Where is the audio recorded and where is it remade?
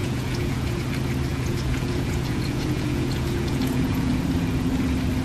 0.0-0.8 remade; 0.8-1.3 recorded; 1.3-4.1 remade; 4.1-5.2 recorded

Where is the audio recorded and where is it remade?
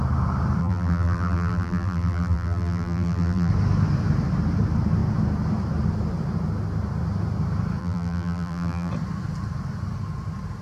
0.0-0.6 recorded; 0.6-3.5 remade; 3.5-7.8 recorded; 7.8-8.9 remade; 8.9-10.6 recorded